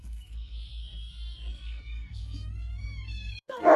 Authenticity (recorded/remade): remade